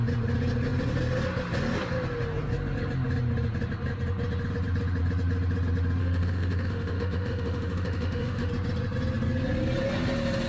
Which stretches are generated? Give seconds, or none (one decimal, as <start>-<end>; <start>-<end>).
6.0-8.5